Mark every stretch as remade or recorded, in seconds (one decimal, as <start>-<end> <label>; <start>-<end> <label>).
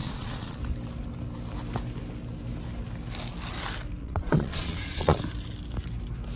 0.0-0.6 remade; 0.6-4.0 recorded; 4.0-5.2 remade; 5.2-6.4 recorded